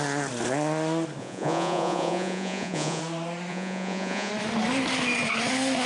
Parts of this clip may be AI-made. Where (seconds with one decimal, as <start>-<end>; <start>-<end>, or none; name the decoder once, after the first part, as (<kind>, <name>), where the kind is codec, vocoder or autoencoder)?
1.2-3.0 (vocoder, Vocos); 3.5-4.3